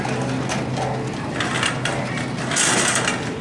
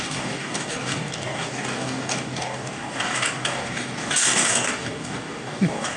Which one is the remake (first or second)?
second